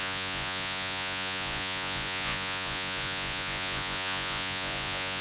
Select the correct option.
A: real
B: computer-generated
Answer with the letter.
B